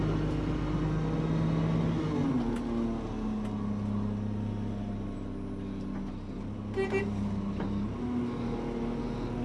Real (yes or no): yes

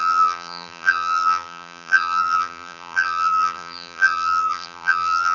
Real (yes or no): no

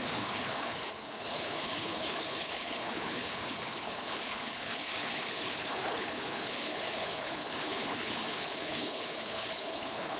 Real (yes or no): no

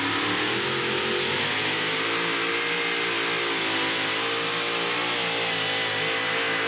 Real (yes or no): yes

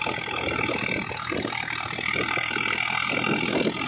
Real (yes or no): yes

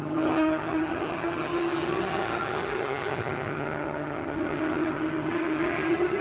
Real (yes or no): no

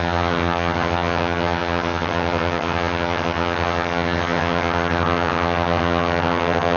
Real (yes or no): no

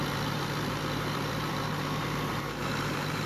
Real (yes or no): no